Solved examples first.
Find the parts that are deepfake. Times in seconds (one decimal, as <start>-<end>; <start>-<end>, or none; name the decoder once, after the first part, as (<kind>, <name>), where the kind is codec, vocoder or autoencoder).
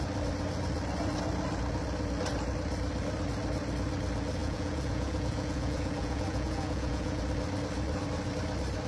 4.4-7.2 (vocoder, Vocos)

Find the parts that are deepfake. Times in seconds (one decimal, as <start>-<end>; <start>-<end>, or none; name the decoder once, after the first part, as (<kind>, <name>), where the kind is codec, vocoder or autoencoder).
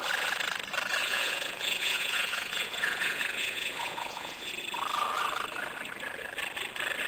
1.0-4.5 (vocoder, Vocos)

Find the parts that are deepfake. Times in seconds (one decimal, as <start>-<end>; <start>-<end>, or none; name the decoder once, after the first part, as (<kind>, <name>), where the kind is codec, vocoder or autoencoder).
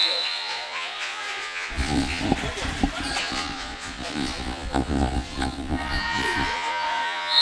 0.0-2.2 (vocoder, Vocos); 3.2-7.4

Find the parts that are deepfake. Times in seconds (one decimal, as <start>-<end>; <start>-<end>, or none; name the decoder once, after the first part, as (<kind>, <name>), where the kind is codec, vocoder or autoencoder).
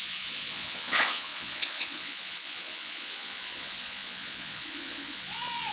0.0-5.7 (vocoder, Vocos)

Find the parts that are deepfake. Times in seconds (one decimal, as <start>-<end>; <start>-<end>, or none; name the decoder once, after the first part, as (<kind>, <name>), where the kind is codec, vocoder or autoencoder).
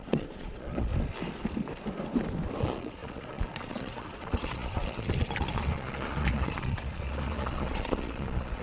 0.0-0.9 (vocoder, Vocos); 2.6-8.6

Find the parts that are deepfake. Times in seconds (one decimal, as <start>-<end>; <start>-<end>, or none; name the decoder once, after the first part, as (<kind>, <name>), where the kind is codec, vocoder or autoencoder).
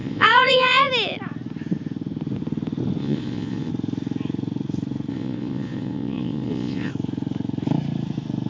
0.0-0.9 (vocoder, Vocos); 3.0-3.7; 5.1-6.9